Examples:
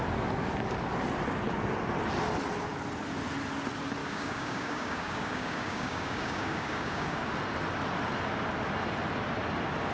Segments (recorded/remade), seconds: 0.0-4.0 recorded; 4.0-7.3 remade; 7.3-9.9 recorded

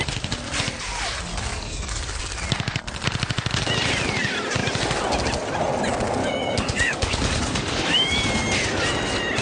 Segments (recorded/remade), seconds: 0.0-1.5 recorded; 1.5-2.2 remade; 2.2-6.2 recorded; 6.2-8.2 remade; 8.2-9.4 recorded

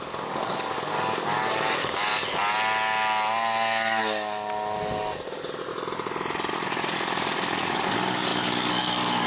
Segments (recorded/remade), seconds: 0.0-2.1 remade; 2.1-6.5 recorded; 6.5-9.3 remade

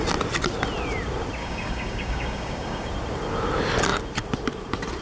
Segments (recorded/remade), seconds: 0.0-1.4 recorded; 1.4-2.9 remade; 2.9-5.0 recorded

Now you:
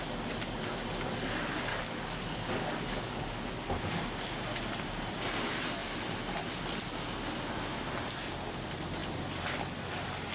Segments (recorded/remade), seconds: 0.0-1.7 recorded; 1.7-3.5 remade; 3.5-10.3 recorded